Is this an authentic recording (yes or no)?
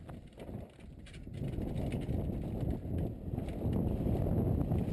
yes